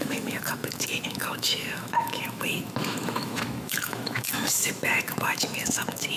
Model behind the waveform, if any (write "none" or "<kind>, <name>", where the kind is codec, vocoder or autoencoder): autoencoder, DAC-VAE